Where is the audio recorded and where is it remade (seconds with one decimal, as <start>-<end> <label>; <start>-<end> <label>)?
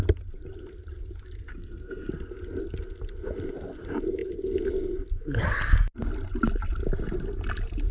0.0-1.5 recorded; 1.5-2.1 remade; 2.1-7.9 recorded